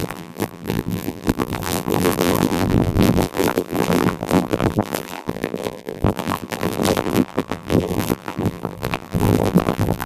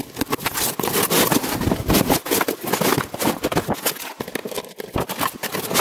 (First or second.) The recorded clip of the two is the second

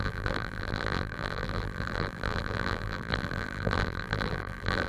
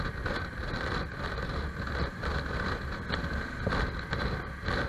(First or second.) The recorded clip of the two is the second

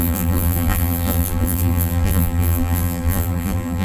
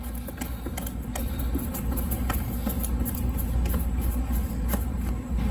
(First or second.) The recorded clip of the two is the second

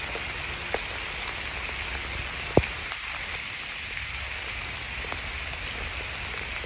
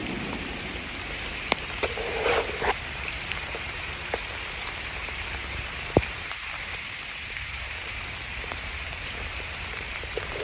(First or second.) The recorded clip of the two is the first